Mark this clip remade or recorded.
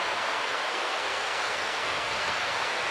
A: remade